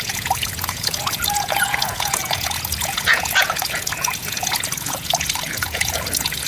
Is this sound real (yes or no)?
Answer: no